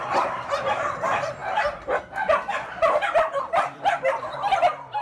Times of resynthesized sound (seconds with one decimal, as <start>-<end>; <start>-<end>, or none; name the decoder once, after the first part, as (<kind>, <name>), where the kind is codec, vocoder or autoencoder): 0.0-1.4 (vocoder, BigVGAN v2); 3.4-5.0